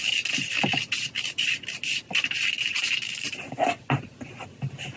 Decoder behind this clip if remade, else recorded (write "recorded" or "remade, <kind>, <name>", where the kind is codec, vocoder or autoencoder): recorded